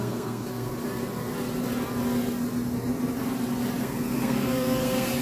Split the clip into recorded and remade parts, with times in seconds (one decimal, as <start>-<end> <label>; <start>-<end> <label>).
0.0-0.7 remade; 0.7-3.8 recorded; 3.8-5.2 remade